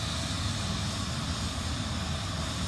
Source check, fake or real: real